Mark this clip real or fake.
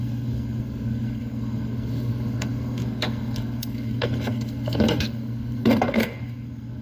fake